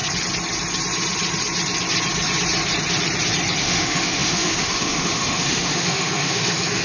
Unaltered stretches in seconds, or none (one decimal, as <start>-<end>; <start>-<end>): 0.0-3.6